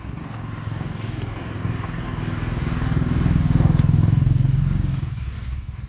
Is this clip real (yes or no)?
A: no